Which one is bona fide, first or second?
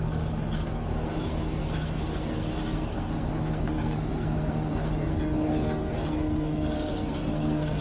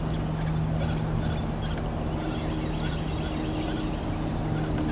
second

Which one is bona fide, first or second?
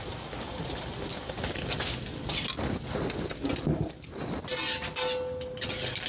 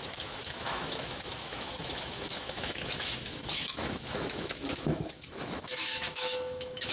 first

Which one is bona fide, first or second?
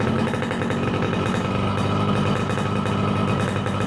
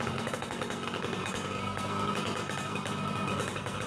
first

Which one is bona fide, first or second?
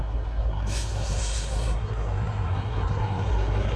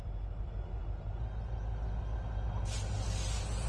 second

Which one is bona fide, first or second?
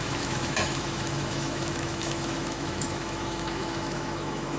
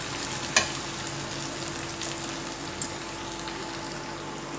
second